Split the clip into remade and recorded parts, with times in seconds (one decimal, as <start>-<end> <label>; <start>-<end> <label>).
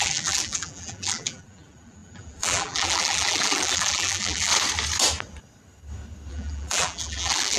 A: 0.0-4.5 remade; 4.5-6.3 recorded; 6.3-7.6 remade